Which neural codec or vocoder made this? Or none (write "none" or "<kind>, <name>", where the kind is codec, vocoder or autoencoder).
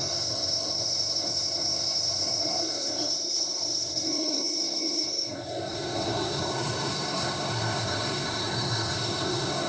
codec, SNAC